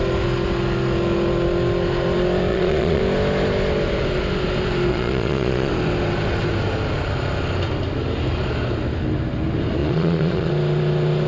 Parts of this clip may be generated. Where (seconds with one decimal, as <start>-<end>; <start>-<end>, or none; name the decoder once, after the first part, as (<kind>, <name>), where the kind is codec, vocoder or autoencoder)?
2.5-3.0 (vocoder, Vocos); 4.9-5.7; 9.8-10.5